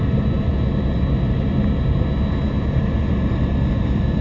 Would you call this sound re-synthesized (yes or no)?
no